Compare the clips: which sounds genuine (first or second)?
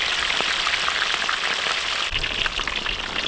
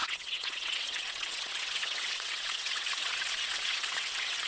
first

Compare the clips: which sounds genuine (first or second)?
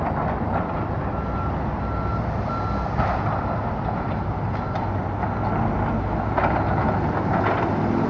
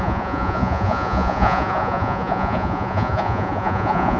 first